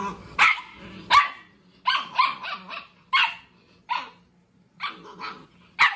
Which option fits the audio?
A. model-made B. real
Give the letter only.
B